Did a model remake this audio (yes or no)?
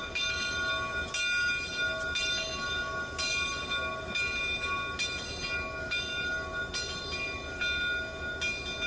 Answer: no